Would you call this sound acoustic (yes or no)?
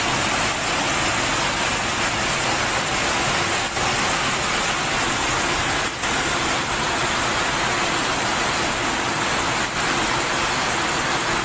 yes